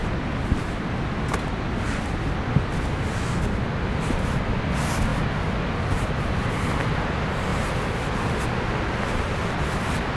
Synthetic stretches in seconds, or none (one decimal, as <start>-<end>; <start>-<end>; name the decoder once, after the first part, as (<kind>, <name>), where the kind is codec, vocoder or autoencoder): none

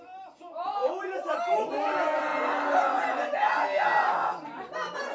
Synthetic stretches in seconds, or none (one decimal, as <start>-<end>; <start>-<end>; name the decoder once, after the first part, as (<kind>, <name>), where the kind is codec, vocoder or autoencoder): none

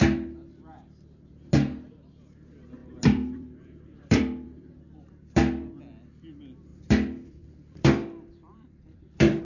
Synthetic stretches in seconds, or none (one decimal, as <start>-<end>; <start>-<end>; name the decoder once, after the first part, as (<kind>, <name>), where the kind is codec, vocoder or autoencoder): 2.8-5.8 (vocoder, BigVGAN v2); 6.7-9.4